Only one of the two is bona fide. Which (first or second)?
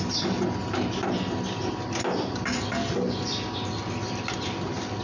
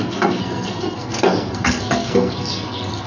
first